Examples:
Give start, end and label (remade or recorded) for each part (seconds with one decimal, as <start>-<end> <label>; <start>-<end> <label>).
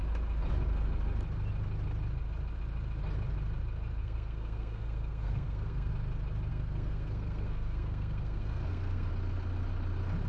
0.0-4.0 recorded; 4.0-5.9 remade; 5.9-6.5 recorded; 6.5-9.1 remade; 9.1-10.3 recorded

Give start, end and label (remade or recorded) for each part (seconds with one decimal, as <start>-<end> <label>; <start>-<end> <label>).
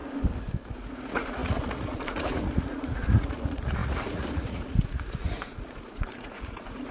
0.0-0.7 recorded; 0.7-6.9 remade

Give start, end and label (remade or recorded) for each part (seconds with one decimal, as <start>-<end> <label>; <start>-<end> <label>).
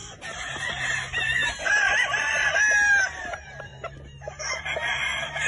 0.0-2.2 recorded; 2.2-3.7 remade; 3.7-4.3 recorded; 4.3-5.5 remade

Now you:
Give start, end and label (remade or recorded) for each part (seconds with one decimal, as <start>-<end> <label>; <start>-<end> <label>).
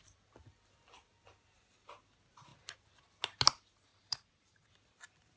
0.0-3.9 recorded; 3.9-4.7 remade; 4.7-5.4 recorded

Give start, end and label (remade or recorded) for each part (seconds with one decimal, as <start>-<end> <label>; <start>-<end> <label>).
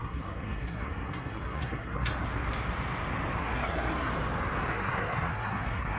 0.0-2.1 remade; 2.1-3.4 recorded; 3.4-4.1 remade; 4.1-4.7 recorded; 4.7-6.0 remade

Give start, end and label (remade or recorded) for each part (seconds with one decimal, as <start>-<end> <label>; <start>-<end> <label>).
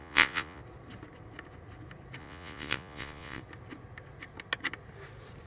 0.0-0.6 remade; 0.6-2.2 recorded; 2.2-3.4 remade; 3.4-5.5 recorded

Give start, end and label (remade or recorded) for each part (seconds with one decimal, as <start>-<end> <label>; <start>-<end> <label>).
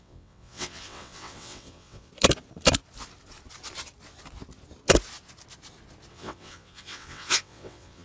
0.0-2.1 remade; 2.1-6.1 recorded; 6.1-8.0 remade